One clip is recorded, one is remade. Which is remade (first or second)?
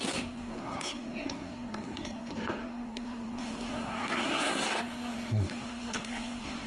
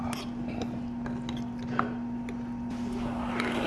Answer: first